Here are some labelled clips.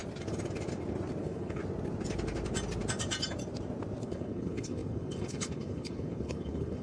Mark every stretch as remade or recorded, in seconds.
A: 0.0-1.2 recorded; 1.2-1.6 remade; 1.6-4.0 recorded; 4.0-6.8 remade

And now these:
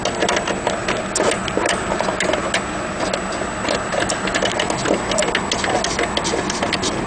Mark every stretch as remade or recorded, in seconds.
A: 0.0-7.1 recorded

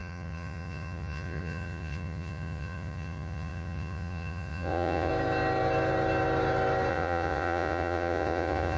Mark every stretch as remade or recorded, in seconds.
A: 0.0-5.1 remade; 5.1-6.9 recorded; 6.9-8.8 remade

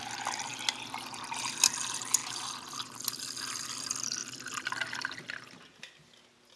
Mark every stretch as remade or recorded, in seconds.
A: 0.0-6.6 recorded

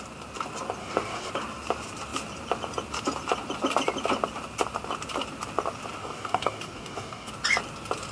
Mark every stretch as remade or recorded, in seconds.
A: 0.0-0.8 recorded; 0.8-1.3 remade; 1.3-6.0 recorded; 6.0-7.3 remade; 7.3-8.1 recorded